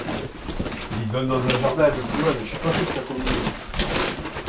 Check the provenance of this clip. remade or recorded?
recorded